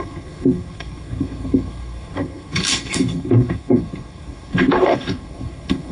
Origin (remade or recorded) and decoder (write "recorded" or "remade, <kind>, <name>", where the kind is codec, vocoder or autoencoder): remade, codec, SNAC